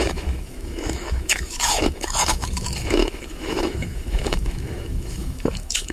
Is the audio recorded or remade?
remade